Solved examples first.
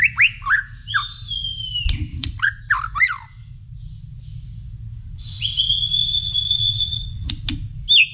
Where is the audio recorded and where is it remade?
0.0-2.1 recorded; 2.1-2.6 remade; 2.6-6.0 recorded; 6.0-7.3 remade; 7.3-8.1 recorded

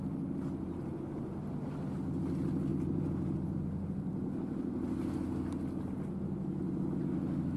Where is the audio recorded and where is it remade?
0.0-7.6 recorded

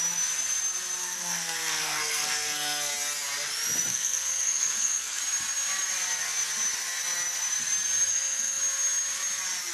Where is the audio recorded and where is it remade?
0.0-1.0 recorded; 1.0-2.9 remade; 2.9-3.9 recorded; 3.9-5.2 remade; 5.2-8.1 recorded; 8.1-8.6 remade; 8.6-9.7 recorded

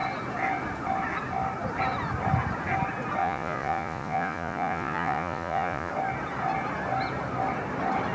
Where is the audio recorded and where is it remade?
0.0-3.2 recorded; 3.2-5.9 remade; 5.9-8.1 recorded

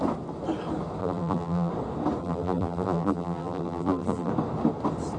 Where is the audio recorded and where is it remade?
0.0-1.0 recorded; 1.0-1.7 remade; 1.7-2.2 recorded; 2.2-4.3 remade; 4.3-5.2 recorded

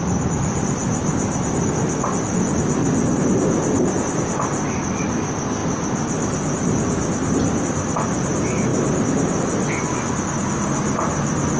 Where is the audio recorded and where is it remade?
0.0-0.8 recorded; 0.8-2.0 remade; 2.0-5.6 recorded; 5.6-7.6 remade; 7.6-11.6 recorded

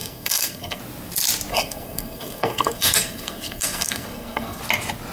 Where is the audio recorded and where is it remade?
0.0-0.8 remade; 0.8-1.5 recorded; 1.5-4.6 remade; 4.6-5.1 recorded

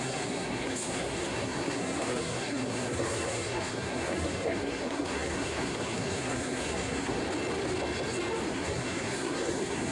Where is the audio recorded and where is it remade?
0.0-7.2 remade; 7.2-8.5 recorded; 8.5-9.9 remade